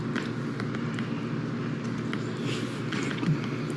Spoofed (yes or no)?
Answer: no